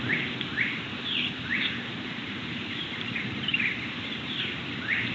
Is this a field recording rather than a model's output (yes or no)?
no